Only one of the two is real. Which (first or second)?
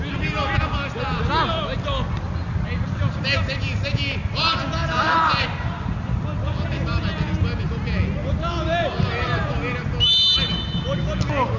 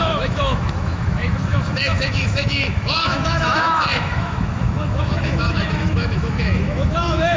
first